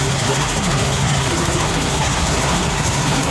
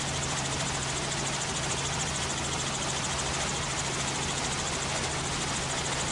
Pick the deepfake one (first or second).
first